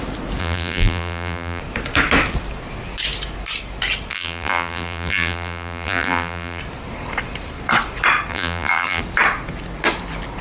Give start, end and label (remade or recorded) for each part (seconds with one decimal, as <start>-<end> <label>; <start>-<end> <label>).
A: 0.0-0.4 recorded; 0.4-1.6 remade; 1.6-4.1 recorded; 4.1-6.6 remade; 6.6-8.3 recorded; 8.3-9.0 remade; 9.0-10.4 recorded